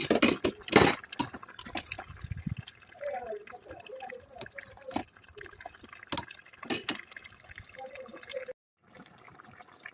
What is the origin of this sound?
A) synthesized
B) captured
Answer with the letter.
B